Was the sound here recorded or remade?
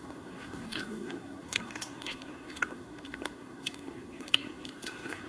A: remade